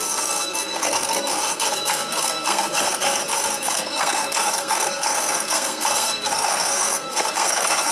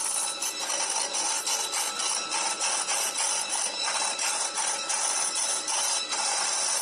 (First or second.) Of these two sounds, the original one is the second